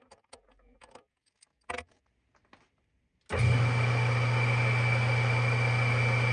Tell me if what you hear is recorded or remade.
recorded